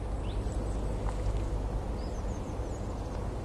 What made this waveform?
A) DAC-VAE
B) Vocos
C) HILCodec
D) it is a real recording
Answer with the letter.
D